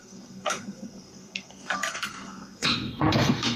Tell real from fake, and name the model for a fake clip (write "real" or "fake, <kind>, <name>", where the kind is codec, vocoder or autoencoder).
fake, codec, SNAC